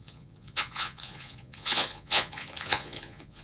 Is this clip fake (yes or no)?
yes